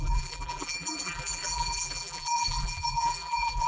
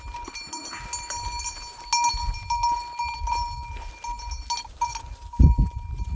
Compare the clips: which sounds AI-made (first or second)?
first